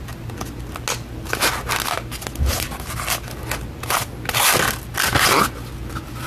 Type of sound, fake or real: real